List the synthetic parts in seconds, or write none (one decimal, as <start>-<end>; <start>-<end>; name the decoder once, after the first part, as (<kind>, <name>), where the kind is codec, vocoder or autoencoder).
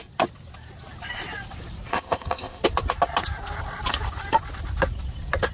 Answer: 1.9-2.6 (codec, ZipCodec)